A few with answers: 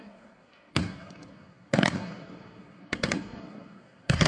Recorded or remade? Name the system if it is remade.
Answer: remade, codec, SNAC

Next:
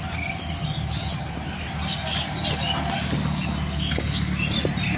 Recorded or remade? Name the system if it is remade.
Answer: recorded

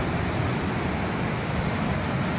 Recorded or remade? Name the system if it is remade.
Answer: recorded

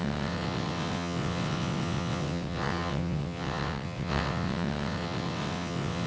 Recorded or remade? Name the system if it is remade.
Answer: remade, vocoder, WaveNeXt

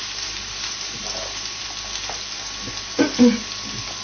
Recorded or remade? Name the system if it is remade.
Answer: recorded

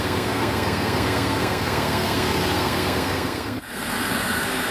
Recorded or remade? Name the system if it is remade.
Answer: remade, codec, SNAC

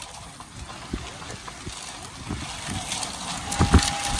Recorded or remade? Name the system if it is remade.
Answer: recorded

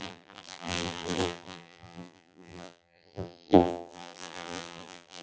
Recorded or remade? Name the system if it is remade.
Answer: remade, vocoder, BigVGAN v2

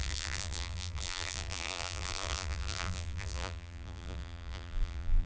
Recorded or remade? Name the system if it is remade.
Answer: remade, vocoder, BigVGAN v2